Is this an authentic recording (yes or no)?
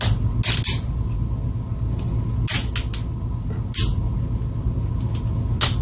yes